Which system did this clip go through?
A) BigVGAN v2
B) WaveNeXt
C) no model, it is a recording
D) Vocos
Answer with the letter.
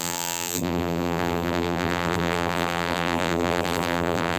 A